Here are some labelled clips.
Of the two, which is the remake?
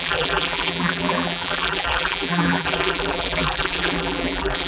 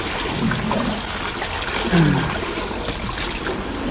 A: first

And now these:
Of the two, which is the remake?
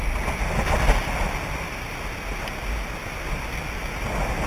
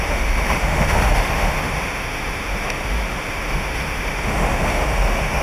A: second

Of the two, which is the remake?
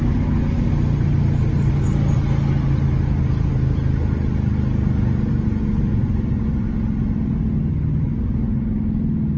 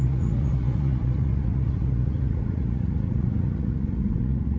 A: second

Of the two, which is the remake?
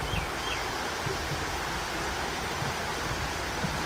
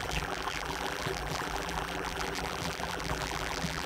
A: second